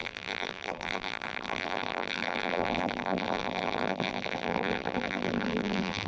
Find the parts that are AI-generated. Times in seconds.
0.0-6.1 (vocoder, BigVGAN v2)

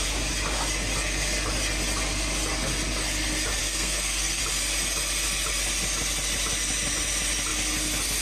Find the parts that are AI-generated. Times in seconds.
3.6-4.4 (codec, SNAC)

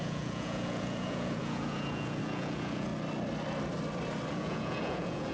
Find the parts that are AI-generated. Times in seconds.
0.0-2.9 (vocoder, Vocos); 4.3-5.3

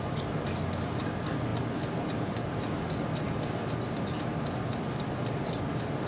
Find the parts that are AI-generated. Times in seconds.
none

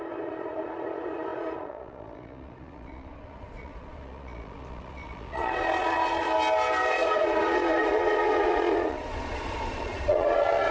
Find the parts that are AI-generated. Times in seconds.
0.0-6.3 (vocoder, Vocos); 6.9-10.7